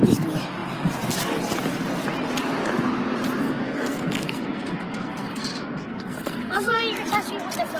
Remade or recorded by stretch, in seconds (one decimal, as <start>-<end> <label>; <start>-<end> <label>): 0.0-3.4 recorded; 3.4-6.8 remade; 6.8-7.8 recorded